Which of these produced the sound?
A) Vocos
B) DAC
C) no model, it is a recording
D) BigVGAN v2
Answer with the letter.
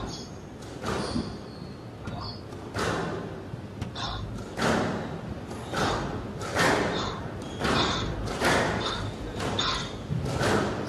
C